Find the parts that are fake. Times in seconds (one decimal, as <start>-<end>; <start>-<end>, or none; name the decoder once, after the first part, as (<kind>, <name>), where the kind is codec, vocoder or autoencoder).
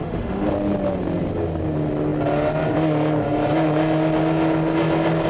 0.0-0.5 (autoencoder, DAC-VAE)